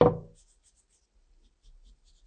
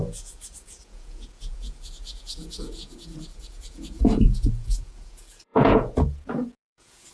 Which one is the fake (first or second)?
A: second